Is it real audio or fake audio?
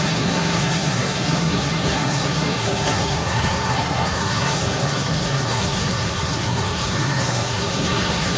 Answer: fake